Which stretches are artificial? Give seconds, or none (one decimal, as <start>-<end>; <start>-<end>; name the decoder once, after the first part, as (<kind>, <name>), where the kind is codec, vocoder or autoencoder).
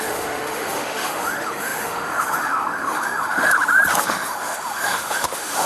0.0-3.5 (autoencoder, DAC-VAE); 4.0-5.7